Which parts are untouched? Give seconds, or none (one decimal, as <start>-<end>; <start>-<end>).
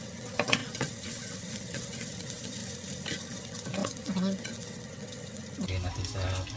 2.6-3.3; 5.4-6.6